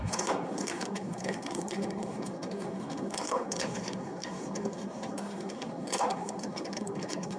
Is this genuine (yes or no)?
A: no